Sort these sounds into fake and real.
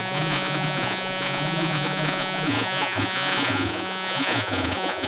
fake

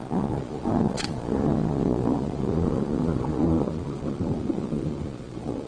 fake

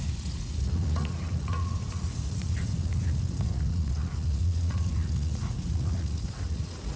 fake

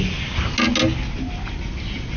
real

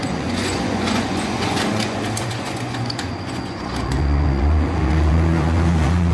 fake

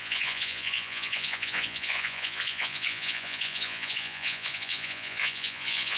fake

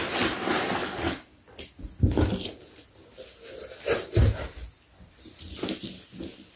real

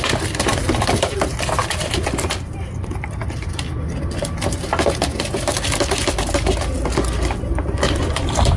real